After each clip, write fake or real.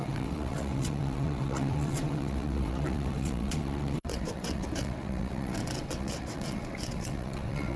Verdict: fake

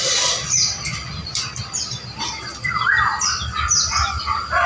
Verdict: real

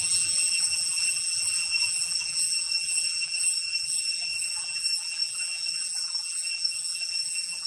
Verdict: fake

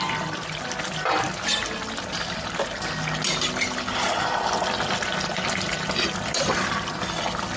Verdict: real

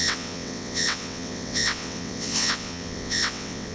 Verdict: fake